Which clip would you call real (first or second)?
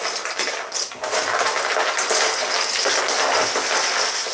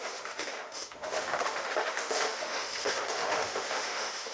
first